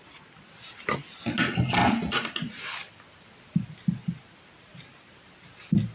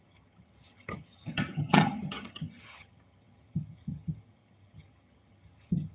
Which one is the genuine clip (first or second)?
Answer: first